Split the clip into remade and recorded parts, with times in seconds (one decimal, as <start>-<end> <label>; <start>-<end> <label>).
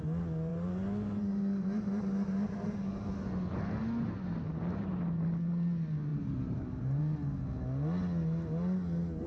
0.0-0.5 recorded; 0.5-3.1 remade; 3.1-6.1 recorded; 6.1-7.0 remade; 7.0-9.3 recorded